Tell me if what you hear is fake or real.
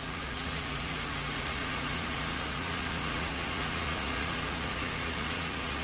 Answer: fake